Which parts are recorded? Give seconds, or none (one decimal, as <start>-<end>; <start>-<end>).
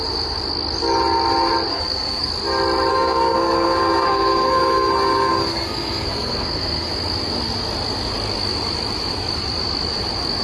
0.0-1.7; 2.3-2.9; 6.9-10.4